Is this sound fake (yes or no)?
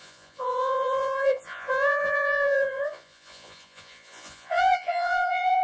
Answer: yes